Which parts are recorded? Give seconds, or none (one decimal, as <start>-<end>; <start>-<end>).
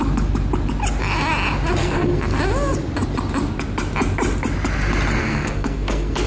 0.0-1.8; 2.4-5.2